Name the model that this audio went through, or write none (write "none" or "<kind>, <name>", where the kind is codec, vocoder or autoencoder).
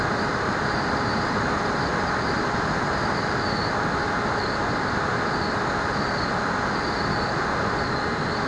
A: none